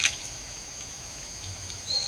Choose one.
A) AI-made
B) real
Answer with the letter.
A